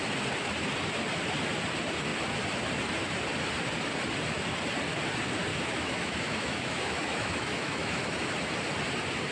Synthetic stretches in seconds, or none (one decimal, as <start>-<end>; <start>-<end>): 5.5-8.1